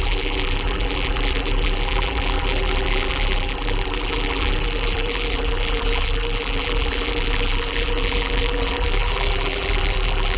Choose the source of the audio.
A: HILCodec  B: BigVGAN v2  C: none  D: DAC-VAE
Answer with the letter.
B